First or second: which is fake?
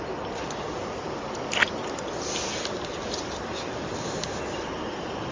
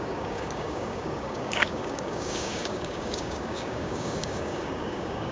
second